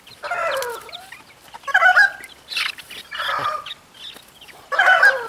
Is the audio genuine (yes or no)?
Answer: yes